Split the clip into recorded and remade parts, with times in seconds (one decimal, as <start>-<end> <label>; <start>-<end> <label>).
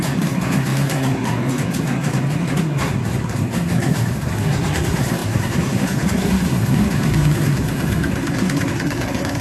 0.0-9.4 remade